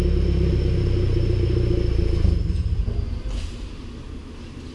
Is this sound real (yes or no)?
yes